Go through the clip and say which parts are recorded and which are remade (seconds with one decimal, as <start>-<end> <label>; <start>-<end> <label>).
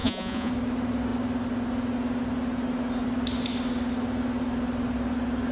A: 0.0-0.5 remade; 0.5-5.5 recorded